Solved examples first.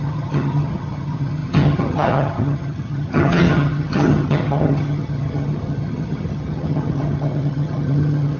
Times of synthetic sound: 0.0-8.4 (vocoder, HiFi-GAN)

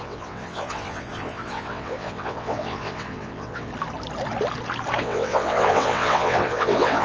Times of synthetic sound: 0.0-3.7 (vocoder, WaveNeXt); 5.0-7.0

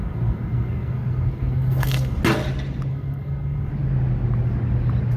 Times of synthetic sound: 0.0-2.2 (codec, SNAC); 2.9-3.7

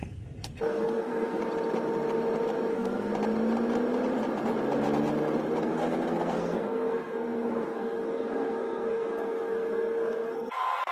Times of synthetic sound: 0.0-1.4 (codec, SNAC); 2.7-3.1; 5.6-10.9